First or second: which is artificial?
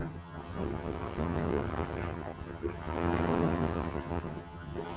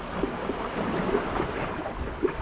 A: first